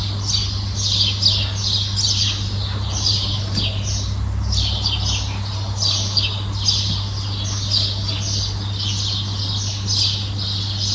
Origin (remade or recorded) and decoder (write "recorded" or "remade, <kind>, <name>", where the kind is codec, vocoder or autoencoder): recorded